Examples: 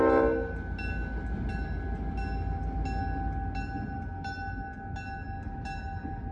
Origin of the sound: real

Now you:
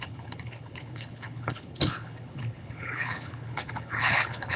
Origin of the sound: fake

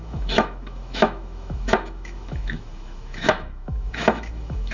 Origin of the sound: fake